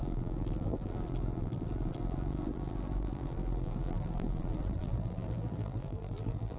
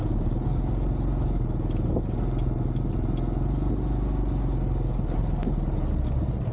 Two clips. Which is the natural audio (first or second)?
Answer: second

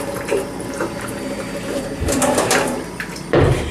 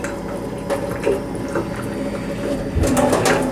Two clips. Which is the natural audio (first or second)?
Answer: second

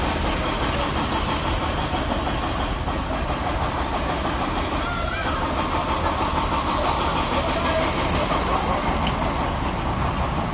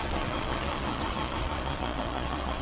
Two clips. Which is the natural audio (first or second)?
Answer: first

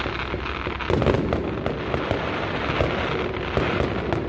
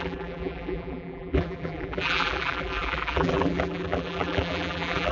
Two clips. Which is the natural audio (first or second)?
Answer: first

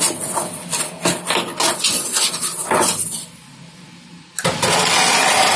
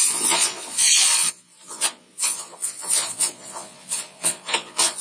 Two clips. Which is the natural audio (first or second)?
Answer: first